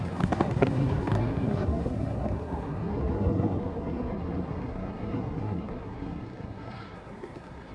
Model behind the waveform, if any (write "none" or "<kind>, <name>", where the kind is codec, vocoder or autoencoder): codec, SNAC